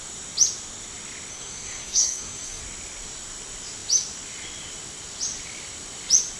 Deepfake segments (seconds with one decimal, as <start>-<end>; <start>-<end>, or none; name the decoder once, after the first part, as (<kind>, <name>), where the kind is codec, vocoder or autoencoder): 1.3-2.6 (codec, SNAC)